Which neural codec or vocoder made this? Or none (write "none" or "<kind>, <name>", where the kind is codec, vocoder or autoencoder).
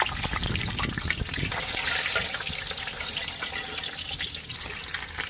none